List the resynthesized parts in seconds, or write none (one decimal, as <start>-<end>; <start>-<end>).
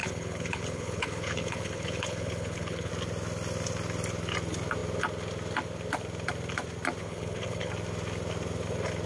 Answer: 0.0-2.9; 7.0-7.7